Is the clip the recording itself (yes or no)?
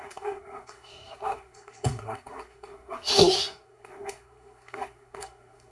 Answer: no